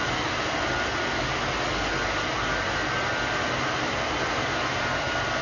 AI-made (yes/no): no